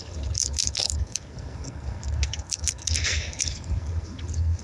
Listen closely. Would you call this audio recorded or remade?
remade